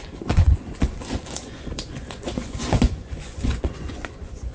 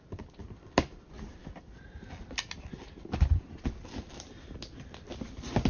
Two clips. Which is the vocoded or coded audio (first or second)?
first